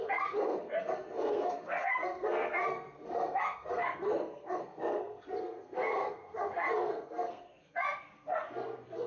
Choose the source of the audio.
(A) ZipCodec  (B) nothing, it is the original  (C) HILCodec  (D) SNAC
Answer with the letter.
D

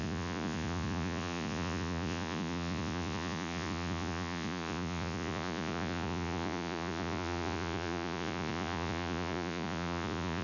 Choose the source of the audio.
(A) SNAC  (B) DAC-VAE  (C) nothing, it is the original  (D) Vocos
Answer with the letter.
D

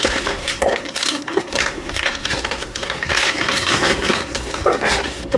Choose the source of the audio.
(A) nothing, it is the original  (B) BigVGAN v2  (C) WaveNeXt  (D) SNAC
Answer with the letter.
D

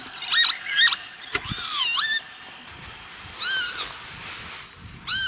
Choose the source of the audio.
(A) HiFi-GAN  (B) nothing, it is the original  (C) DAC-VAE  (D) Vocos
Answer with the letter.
B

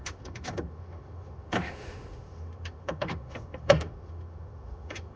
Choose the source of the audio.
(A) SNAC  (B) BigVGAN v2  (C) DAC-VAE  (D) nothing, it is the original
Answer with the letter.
C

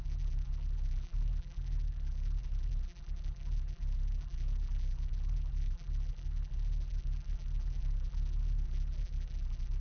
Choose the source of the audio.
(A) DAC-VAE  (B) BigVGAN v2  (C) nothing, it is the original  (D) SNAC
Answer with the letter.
B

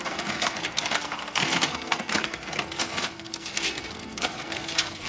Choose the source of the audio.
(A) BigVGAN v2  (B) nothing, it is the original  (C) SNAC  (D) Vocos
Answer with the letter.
C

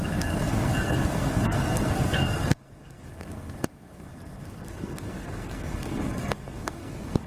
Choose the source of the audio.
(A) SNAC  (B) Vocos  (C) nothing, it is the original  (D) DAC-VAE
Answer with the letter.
A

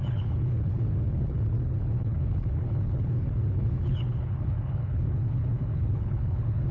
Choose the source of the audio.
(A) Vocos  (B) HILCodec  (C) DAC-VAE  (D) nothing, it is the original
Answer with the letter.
B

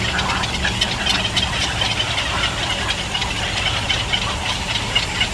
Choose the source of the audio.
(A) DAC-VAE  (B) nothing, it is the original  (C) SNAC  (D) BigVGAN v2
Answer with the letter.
B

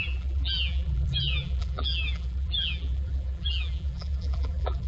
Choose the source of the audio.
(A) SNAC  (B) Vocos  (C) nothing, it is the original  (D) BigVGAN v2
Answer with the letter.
D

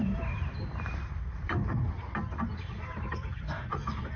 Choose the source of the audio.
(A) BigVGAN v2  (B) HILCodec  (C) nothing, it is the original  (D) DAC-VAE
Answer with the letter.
A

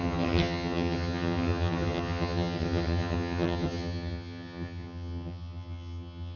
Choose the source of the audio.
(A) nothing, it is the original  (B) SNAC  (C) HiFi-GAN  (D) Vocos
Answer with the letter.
C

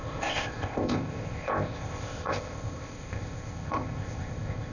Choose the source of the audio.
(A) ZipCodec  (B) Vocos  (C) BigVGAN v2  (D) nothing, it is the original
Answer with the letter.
A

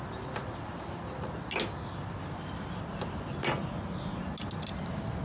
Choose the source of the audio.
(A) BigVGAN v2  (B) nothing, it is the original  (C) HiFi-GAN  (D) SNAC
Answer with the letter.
B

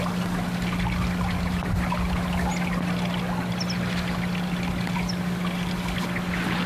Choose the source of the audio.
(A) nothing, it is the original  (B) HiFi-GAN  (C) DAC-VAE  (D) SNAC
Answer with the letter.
A